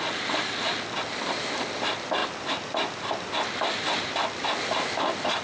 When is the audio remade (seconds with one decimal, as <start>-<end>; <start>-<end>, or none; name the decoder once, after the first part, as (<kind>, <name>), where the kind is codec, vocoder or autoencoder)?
none